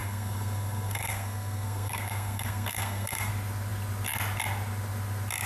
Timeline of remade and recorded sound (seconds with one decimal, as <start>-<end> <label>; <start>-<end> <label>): 0.0-3.3 remade; 3.3-5.5 recorded

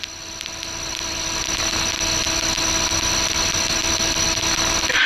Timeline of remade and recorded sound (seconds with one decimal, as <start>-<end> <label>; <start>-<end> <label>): 0.0-5.1 recorded

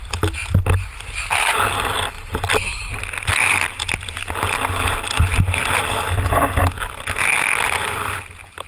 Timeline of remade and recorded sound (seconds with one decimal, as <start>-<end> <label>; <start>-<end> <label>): 0.0-8.7 recorded

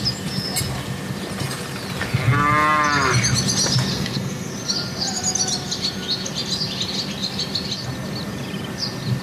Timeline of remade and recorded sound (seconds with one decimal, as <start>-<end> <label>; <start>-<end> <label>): 0.0-3.9 recorded; 3.9-4.5 remade; 4.5-9.2 recorded